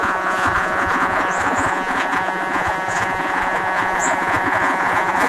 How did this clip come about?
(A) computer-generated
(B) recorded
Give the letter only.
A